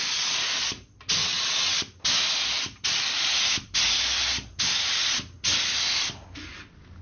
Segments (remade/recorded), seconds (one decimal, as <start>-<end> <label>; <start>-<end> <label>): 0.0-1.2 recorded; 1.2-1.8 remade; 1.8-7.0 recorded